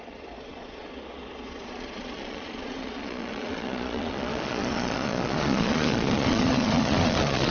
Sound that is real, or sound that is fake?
fake